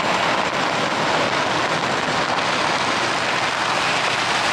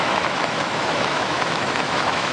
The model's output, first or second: second